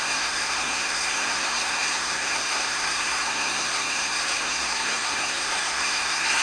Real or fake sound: fake